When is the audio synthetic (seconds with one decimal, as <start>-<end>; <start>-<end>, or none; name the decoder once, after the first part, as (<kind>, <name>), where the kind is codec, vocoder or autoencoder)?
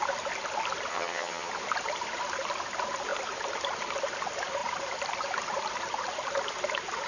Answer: 0.9-1.5 (vocoder, HiFi-GAN)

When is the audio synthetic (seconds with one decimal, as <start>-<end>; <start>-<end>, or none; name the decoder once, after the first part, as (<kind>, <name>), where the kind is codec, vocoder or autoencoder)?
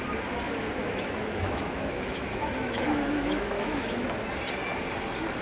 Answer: 0.8-4.0 (autoencoder, DAC-VAE)